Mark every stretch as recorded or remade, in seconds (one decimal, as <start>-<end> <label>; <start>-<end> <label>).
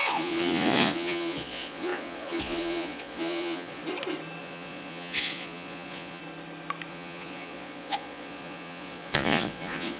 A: 0.0-3.8 remade; 3.8-4.4 recorded; 4.4-6.2 remade; 6.2-6.9 recorded; 6.9-10.0 remade